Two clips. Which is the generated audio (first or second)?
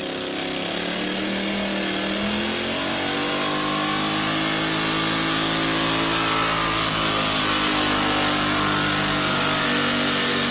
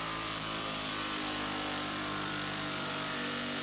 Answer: second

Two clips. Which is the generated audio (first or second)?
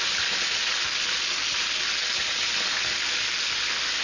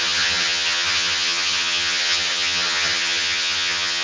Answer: second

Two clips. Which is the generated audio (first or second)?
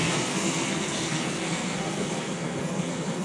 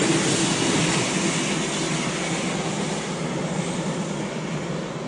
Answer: first